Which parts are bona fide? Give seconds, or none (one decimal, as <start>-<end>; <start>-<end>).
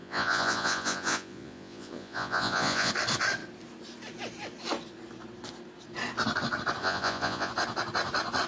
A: 2.9-6.8; 7.5-8.5